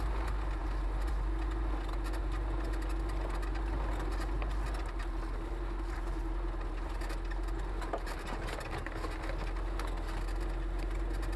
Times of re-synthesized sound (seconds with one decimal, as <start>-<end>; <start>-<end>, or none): none